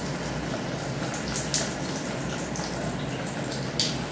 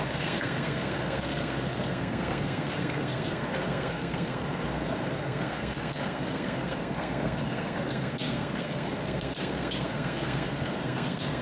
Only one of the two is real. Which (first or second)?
first